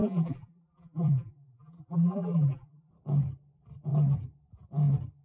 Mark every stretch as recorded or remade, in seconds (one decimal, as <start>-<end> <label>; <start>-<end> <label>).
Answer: 0.0-2.9 remade; 2.9-5.2 recorded